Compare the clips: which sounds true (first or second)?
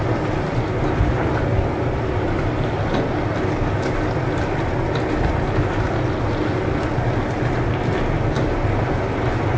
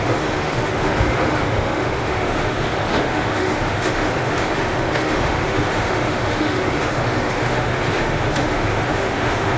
first